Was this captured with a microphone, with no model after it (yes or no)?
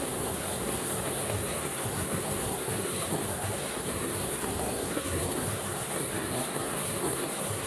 no